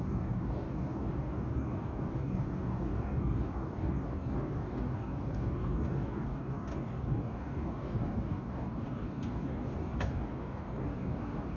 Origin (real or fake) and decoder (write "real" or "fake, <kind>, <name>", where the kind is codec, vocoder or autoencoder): fake, codec, DAC